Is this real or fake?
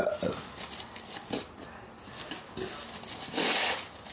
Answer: real